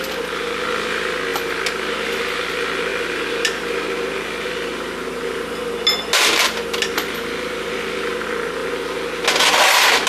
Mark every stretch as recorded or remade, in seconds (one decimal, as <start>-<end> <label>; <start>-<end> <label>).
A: 0.0-10.1 recorded